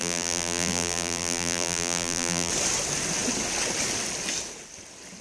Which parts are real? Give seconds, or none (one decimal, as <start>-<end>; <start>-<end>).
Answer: 2.5-5.2